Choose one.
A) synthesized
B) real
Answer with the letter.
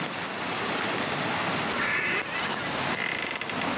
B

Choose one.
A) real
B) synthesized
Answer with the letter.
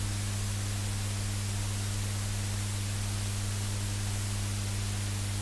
A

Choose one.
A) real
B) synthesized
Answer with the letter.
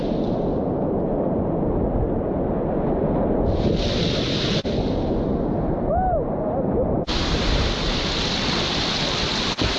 A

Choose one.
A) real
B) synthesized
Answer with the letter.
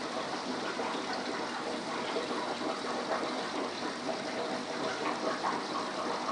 A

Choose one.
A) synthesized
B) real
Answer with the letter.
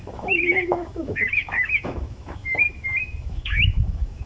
A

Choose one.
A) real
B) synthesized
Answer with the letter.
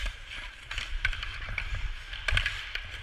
B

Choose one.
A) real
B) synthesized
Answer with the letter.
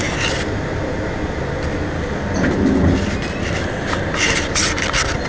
A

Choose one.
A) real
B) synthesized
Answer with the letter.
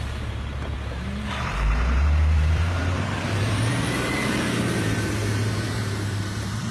B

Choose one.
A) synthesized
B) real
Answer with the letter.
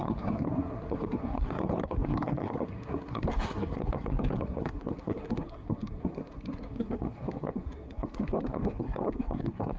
A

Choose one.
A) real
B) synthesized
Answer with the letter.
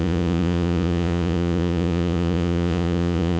B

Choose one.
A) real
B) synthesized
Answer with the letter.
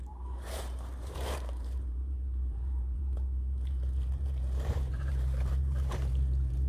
B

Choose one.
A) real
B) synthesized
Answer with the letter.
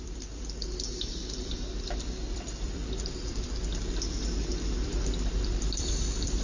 B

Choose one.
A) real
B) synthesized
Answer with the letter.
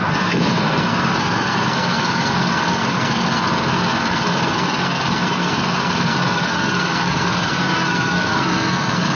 B